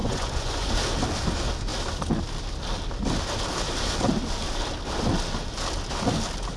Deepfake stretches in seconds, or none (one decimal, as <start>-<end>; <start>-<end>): 0.0-0.7